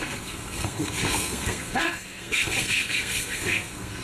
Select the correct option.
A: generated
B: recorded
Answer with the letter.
A